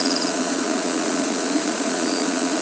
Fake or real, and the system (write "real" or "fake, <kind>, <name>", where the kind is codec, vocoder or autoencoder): fake, vocoder, Vocos